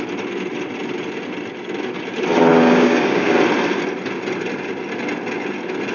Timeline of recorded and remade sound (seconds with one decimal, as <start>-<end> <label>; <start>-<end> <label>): 0.0-2.5 recorded; 2.5-3.3 remade; 3.3-5.9 recorded